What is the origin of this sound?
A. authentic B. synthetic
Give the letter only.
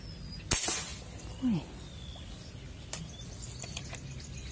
A